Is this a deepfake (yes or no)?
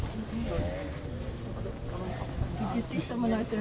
no